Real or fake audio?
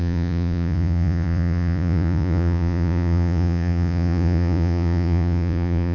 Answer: fake